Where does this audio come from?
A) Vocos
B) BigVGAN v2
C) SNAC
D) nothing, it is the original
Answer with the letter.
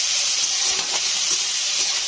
B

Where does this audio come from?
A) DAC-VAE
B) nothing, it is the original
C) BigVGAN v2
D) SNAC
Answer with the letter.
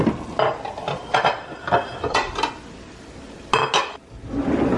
B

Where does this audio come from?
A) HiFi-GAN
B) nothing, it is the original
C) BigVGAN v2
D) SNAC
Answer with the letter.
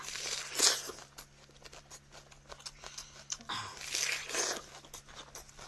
B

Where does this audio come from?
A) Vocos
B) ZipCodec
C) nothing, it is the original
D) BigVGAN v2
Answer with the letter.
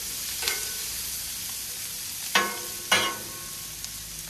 C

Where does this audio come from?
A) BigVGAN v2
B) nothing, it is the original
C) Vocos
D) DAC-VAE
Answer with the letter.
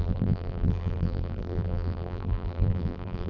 A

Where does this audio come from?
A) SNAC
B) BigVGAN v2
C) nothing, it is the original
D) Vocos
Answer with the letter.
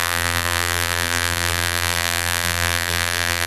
B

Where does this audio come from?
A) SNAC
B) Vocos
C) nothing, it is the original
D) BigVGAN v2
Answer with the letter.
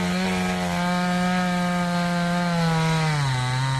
C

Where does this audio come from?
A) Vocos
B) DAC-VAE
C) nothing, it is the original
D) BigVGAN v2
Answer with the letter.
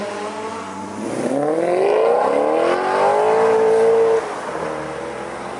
C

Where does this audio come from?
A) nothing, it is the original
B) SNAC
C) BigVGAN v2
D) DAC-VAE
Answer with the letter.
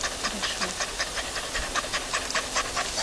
A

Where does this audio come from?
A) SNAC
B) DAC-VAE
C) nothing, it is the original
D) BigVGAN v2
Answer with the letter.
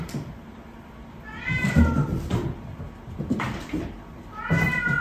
C